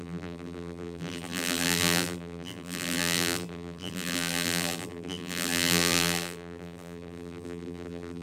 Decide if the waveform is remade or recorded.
remade